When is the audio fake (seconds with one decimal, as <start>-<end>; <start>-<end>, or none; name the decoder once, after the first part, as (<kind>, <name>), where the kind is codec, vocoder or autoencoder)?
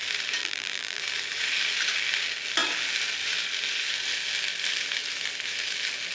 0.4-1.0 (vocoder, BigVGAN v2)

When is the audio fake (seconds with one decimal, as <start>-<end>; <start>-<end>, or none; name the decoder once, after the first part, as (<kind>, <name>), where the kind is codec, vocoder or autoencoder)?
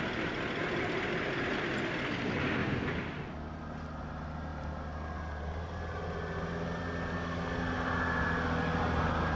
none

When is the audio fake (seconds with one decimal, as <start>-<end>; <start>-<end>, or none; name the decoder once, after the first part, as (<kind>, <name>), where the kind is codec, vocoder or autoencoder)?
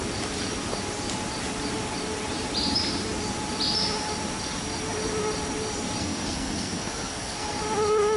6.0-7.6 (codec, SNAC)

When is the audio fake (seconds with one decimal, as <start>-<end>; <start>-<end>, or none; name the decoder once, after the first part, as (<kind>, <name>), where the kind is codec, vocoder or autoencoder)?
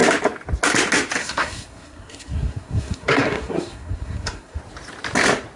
1.2-4.6 (codec, SNAC)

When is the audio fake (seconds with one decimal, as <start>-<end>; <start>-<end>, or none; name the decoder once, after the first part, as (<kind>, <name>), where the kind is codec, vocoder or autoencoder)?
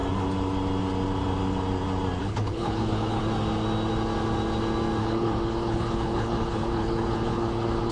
2.2-3.2 (codec, HILCodec); 5.0-7.9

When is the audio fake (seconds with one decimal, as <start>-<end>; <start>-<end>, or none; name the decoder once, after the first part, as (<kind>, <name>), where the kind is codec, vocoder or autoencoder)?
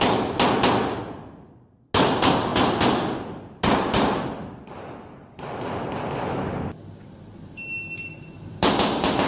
none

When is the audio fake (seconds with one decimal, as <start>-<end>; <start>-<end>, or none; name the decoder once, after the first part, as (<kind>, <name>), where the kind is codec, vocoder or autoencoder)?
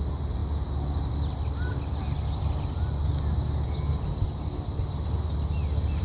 none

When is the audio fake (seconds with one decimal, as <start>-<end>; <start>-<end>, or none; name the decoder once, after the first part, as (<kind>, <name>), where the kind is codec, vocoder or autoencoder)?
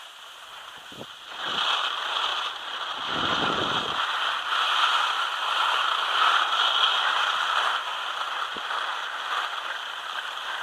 2.3-3.4 (vocoder, BigVGAN v2); 7.9-8.7